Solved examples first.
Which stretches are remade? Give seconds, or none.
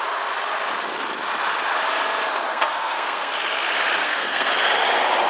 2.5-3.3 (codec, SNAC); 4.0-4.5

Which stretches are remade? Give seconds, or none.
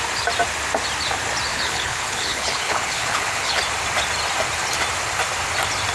1.5-3.6 (codec, HILCodec)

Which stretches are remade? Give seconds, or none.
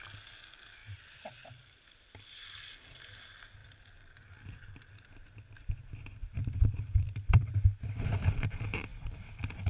0.8-1.6 (vocoder, BigVGAN v2)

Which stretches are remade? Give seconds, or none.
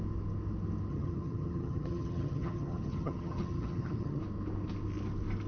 0.9-4.2 (vocoder, HiFi-GAN)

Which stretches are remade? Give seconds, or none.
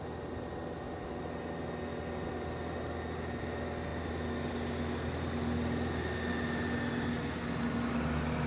none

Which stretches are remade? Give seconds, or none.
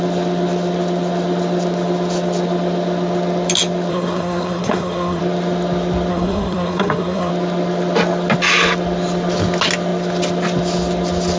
3.9-5.2 (codec, SNAC); 6.1-7.3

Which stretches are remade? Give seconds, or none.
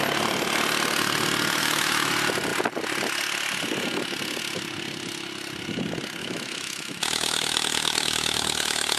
1.6-2.1 (autoencoder, DAC-VAE); 6.2-9.0